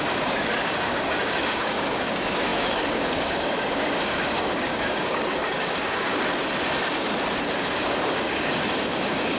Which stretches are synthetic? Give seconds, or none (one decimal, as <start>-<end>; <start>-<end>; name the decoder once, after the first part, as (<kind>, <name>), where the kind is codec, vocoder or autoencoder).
0.0-6.1 (codec, DAC); 7.5-9.4

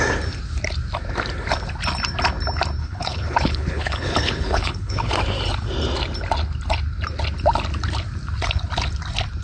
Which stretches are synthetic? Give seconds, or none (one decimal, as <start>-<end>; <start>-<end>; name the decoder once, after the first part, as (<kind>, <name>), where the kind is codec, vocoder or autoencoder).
2.8-5.1 (codec, HILCodec)

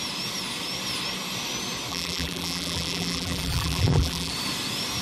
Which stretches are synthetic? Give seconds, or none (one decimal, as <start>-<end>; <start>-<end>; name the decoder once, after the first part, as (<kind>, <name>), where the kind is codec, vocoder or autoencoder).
1.9-4.3 (vocoder, BigVGAN v2)